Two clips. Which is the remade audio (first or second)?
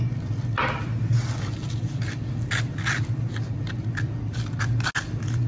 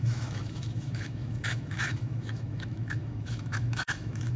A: second